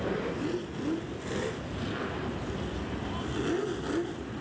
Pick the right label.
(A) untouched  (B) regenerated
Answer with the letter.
A